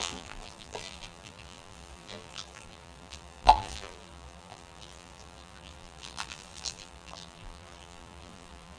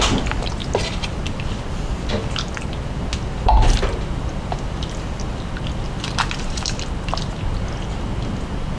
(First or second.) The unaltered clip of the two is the second